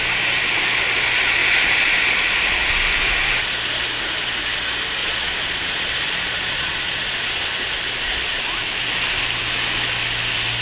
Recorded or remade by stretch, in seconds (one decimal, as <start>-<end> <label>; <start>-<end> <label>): 0.0-5.0 recorded; 5.0-7.5 remade; 7.5-10.6 recorded